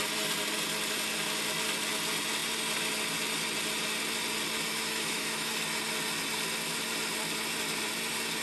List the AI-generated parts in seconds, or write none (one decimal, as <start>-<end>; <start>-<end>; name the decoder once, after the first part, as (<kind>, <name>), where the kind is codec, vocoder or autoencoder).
4.7-5.5 (autoencoder, DAC-VAE)